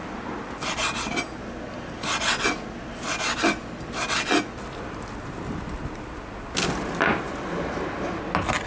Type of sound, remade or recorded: recorded